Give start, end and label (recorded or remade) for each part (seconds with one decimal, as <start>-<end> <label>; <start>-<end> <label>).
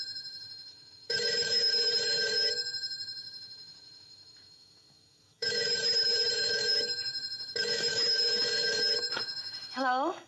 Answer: 0.0-10.3 remade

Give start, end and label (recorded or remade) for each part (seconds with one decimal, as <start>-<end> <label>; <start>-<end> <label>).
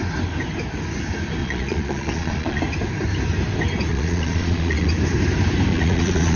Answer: 0.0-1.4 recorded; 1.4-2.6 remade; 2.6-3.9 recorded; 3.9-4.9 remade; 4.9-5.7 recorded; 5.7-6.4 remade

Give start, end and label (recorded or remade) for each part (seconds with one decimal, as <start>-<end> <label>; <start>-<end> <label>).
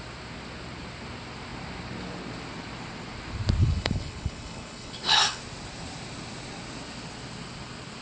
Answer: 0.0-3.6 recorded; 3.6-5.4 remade; 5.4-8.0 recorded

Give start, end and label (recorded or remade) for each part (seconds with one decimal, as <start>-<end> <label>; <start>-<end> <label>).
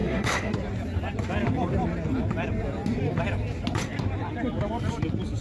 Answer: 0.0-0.5 remade; 0.5-5.4 recorded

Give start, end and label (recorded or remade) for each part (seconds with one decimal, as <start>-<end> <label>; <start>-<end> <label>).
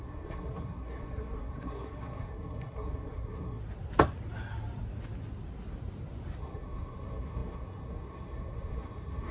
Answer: 0.0-3.6 remade; 3.6-6.4 recorded; 6.4-9.3 remade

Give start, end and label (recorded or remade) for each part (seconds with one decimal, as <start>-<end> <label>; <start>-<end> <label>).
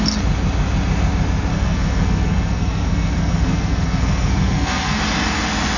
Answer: 0.0-1.5 recorded; 1.5-5.0 remade; 5.0-5.8 recorded